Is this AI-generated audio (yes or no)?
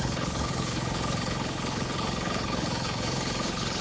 yes